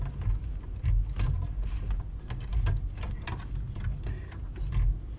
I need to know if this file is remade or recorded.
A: recorded